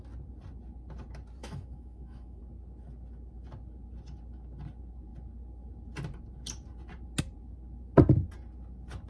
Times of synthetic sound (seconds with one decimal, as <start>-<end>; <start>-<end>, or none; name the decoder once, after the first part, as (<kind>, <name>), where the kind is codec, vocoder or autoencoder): 1.4-2.4 (autoencoder, DAC-VAE)